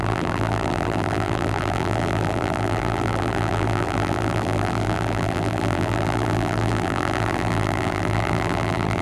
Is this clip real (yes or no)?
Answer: no